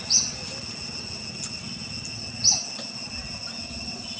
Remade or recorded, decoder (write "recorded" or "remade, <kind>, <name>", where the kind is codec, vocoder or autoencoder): recorded